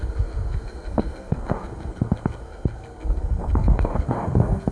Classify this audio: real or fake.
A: fake